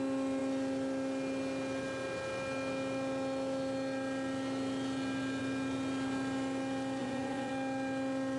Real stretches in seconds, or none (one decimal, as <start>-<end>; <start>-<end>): 0.0-7.0; 7.5-8.4